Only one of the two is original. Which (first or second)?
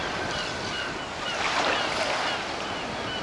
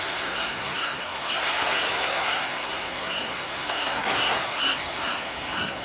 first